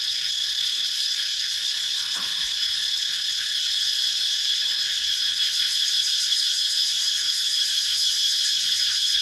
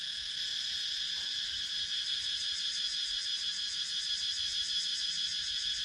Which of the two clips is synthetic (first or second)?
first